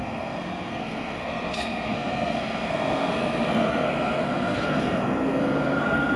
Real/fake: fake